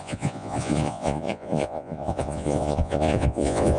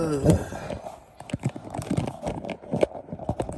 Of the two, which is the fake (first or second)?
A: first